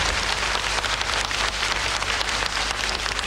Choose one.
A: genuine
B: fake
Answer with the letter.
B